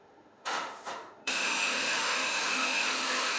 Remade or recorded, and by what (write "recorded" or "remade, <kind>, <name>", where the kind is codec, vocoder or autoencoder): remade, autoencoder, DAC-VAE